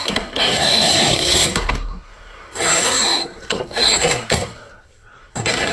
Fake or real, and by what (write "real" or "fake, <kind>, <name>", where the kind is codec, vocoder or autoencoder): fake, codec, SNAC